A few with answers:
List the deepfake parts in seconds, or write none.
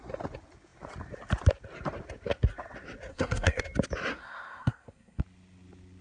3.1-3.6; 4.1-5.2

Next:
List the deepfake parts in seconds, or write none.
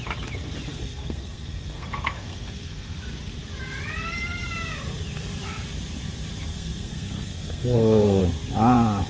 0.7-3.0; 6.5-8.2